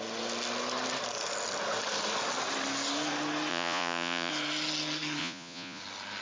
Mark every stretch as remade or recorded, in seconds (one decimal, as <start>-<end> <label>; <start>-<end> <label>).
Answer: 0.0-3.5 recorded; 3.5-4.3 remade; 4.3-5.2 recorded; 5.2-5.8 remade; 5.8-6.2 recorded